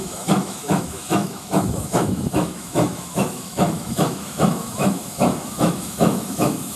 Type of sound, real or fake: fake